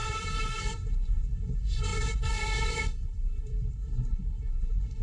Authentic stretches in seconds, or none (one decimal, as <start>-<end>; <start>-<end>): none